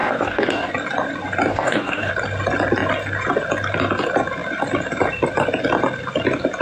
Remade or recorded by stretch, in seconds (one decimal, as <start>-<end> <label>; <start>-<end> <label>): 0.0-0.7 remade; 0.7-1.5 recorded; 1.5-2.1 remade; 2.1-6.6 recorded